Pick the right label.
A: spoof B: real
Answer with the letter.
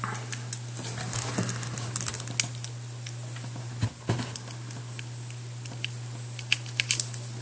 B